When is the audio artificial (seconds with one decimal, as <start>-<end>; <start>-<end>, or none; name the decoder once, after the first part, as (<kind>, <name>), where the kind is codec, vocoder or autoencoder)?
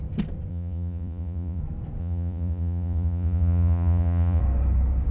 0.5-1.6 (vocoder, Vocos); 2.0-4.4